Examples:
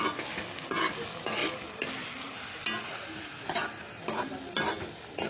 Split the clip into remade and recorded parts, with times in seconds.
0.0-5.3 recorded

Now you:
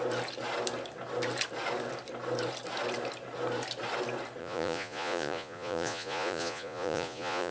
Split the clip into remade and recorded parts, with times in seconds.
0.0-4.4 recorded; 4.4-7.5 remade

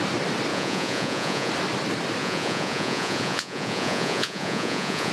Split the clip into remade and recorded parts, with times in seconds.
0.0-0.5 recorded; 0.5-1.5 remade; 1.5-2.2 recorded; 2.2-5.1 remade

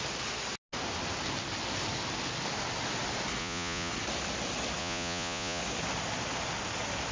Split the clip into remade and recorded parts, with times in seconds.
0.0-3.4 recorded; 3.4-3.9 remade; 3.9-4.8 recorded; 4.8-5.6 remade; 5.6-7.1 recorded

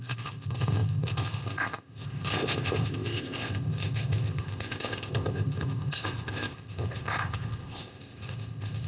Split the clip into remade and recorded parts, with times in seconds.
0.0-8.9 remade